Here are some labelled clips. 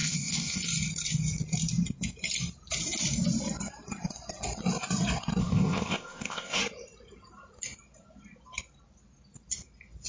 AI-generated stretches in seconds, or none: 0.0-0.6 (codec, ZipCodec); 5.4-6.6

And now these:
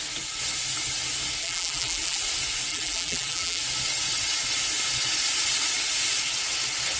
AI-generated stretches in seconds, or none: 1.4-2.2 (vocoder, BigVGAN v2); 2.7-3.6

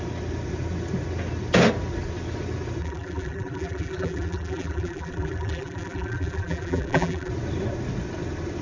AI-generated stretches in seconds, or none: 2.8-7.3 (vocoder, BigVGAN v2)

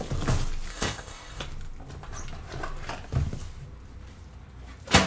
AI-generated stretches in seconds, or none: 0.7-1.4 (codec, ZipCodec)